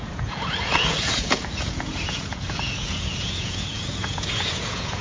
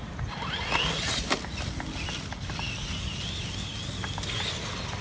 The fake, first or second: first